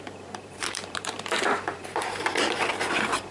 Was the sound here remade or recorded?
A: remade